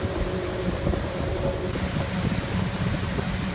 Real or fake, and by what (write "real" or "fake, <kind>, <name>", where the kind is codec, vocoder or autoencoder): fake, vocoder, BigVGAN v2